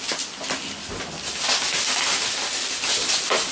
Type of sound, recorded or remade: recorded